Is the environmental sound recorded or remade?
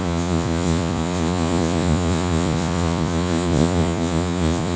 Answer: remade